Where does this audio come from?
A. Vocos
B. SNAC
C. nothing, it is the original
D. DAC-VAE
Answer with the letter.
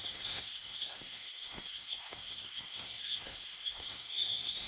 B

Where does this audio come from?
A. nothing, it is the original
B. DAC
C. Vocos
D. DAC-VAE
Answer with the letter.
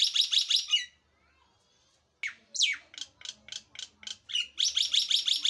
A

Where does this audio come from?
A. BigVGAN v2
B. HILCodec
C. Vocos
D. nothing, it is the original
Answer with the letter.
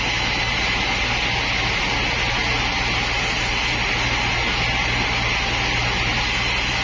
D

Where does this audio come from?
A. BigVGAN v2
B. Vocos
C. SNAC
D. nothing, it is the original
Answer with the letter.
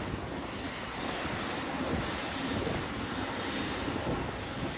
D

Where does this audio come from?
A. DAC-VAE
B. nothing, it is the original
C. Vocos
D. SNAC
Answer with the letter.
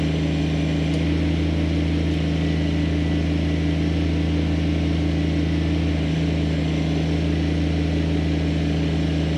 B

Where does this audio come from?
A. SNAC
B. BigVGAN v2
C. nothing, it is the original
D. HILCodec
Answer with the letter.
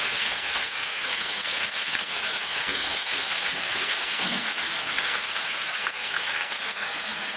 A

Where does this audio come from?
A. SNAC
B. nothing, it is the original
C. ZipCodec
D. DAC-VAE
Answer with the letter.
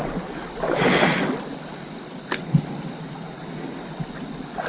B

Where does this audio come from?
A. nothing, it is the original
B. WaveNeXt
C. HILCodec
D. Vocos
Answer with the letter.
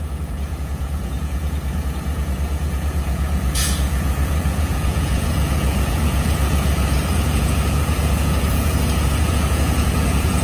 D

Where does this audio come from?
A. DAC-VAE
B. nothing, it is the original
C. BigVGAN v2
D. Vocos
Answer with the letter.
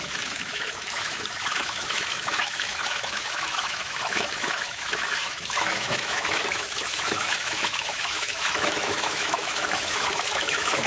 A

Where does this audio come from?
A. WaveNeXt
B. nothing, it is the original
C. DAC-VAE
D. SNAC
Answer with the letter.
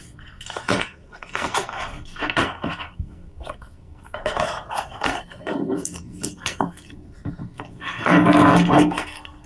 D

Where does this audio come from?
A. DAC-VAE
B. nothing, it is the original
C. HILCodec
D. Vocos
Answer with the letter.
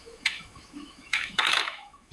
A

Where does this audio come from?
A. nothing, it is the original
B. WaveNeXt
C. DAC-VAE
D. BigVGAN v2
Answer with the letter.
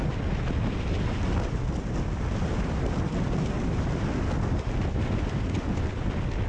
A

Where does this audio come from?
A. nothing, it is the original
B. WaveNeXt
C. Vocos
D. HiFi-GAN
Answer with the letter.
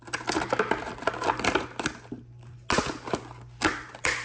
A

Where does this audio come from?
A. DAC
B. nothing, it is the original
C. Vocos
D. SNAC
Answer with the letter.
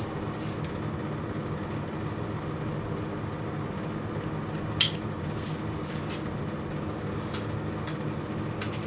B